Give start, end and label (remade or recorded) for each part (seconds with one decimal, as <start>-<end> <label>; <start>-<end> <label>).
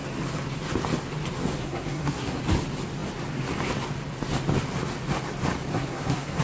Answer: 0.0-1.6 recorded; 1.6-2.4 remade; 2.4-5.7 recorded; 5.7-6.4 remade